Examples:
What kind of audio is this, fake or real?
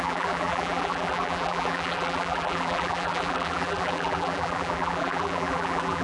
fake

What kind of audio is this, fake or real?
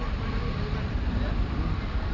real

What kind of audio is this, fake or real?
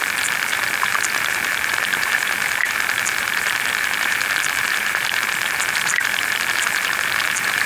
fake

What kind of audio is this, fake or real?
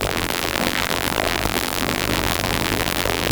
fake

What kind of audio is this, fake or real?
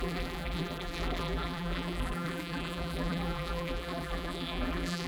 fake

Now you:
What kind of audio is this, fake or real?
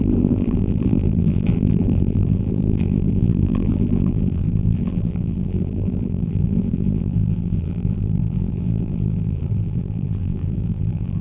fake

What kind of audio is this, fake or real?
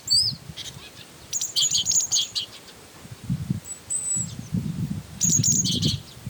fake